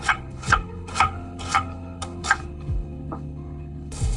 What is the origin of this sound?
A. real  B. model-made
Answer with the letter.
B